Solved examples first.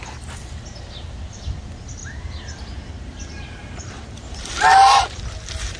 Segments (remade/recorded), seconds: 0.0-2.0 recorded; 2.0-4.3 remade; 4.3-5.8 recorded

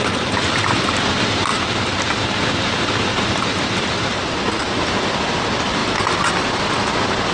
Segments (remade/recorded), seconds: 0.0-7.3 recorded

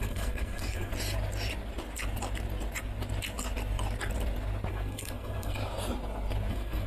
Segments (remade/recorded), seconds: 0.0-0.9 remade; 0.9-4.7 recorded; 4.7-5.6 remade; 5.6-6.5 recorded; 6.5-6.9 remade

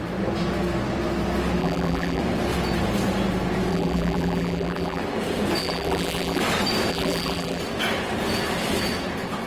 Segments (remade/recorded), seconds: 0.0-1.6 recorded; 1.6-2.2 remade; 2.2-3.7 recorded; 3.7-5.0 remade; 5.0-5.6 recorded; 5.6-6.4 remade; 6.4-6.9 recorded; 6.9-7.6 remade; 7.6-9.5 recorded

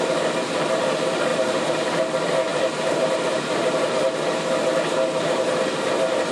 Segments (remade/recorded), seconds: 0.0-1.3 recorded; 1.3-2.0 remade; 2.0-2.5 recorded; 2.5-4.2 remade; 4.2-6.3 recorded

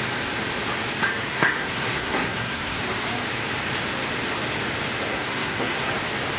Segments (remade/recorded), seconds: 0.0-1.3 recorded; 1.3-2.8 remade; 2.8-5.1 recorded; 5.1-5.9 remade; 5.9-6.4 recorded

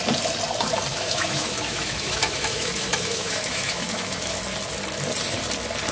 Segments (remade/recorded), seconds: 0.0-0.9 recorded; 0.9-4.4 remade; 4.4-5.9 recorded